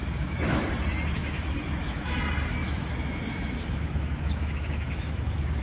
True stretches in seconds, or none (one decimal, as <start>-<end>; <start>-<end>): 0.7-1.2; 2.2-2.6

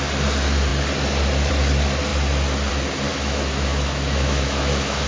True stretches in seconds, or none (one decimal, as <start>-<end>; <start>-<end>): 0.0-3.1

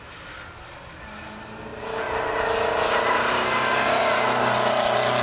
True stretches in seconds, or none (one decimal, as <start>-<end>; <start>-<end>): 0.0-5.2

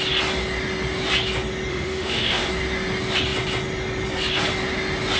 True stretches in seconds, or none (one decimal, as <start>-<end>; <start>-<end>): 0.0-1.7; 2.5-5.2

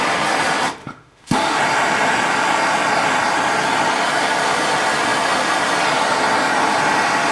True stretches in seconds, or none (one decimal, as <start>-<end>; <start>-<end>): 0.0-0.8; 1.6-7.3